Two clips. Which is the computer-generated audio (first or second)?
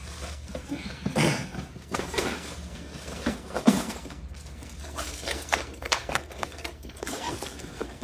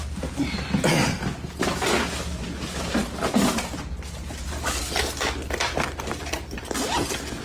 first